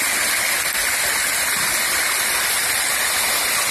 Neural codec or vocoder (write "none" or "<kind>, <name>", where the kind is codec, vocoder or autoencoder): none